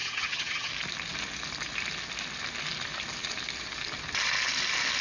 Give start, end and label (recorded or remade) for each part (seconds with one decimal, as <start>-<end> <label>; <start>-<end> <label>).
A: 0.0-0.7 remade; 0.7-5.0 recorded